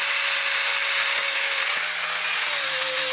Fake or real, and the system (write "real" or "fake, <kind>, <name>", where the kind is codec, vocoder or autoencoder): real